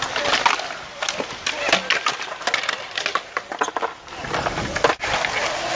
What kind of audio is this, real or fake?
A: real